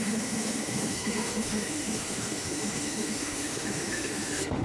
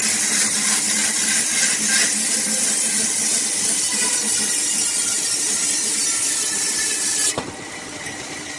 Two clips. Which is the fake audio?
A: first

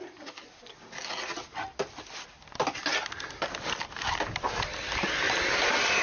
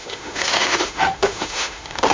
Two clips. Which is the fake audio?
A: second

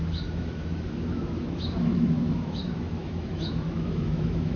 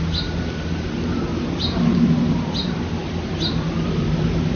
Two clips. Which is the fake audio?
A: first